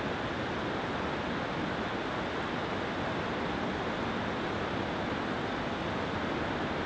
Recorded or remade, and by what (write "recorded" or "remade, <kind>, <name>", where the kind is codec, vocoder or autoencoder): recorded